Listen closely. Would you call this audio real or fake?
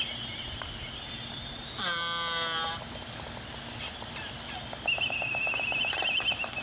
real